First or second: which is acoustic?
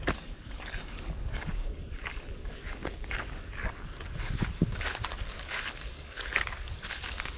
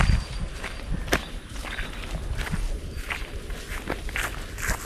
second